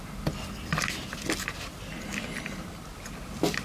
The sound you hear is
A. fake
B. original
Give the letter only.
B